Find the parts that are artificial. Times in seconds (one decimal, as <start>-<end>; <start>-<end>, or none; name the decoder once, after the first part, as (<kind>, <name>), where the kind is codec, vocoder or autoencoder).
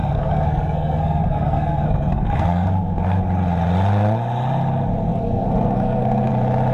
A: 0.0-3.2 (codec, SNAC); 5.1-6.3